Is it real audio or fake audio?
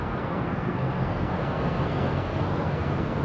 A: fake